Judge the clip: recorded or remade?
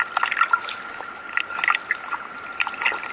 recorded